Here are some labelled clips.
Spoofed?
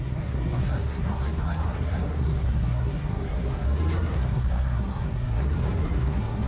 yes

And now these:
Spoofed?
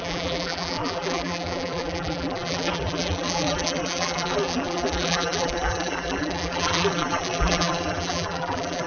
yes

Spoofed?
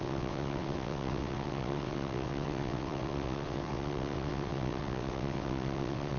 yes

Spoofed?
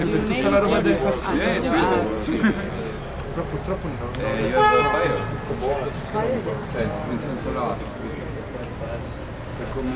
no